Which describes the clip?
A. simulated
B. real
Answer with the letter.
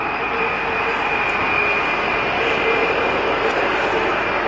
B